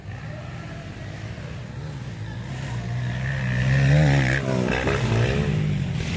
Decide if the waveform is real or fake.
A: real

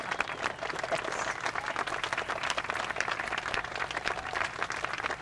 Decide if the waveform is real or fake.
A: real